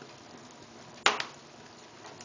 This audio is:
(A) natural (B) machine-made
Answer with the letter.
A